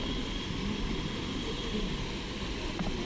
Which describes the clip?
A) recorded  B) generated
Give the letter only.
A